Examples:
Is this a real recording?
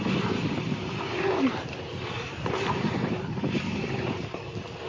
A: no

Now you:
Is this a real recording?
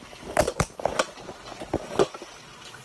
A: yes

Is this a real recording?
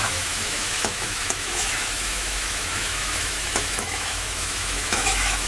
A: no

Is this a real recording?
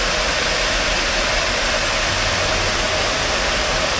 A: yes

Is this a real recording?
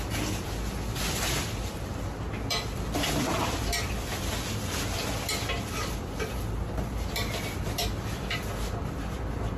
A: yes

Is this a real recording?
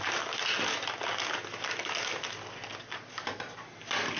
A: yes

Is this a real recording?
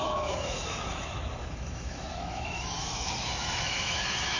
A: no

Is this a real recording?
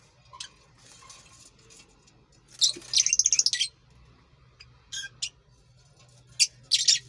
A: yes